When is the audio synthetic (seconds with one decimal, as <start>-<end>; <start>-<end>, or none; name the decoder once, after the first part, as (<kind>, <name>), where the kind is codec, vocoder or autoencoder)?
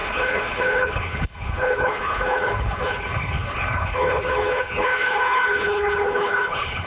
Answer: 0.0-6.9 (codec, HILCodec)